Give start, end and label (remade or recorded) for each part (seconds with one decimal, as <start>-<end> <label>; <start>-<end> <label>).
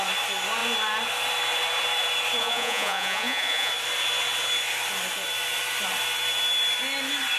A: 0.0-2.4 recorded; 2.4-3.7 remade; 3.7-7.4 recorded